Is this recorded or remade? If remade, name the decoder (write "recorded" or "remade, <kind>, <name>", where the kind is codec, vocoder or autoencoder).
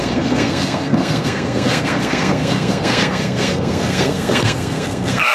remade, codec, SNAC